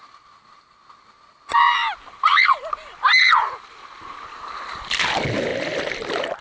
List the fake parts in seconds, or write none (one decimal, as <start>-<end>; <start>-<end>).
none